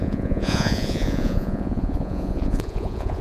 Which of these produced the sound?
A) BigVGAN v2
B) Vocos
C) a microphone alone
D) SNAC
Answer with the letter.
B